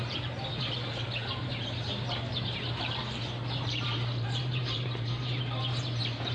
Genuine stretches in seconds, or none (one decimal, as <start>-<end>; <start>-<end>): none